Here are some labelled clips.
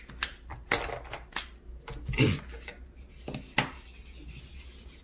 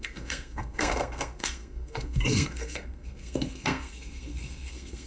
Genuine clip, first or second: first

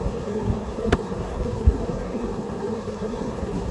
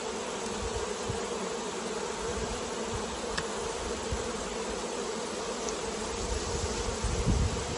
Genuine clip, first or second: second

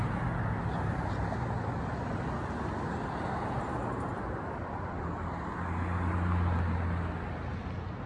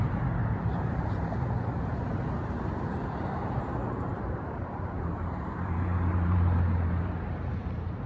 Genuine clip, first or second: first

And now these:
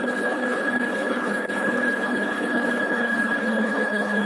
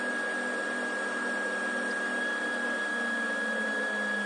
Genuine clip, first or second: second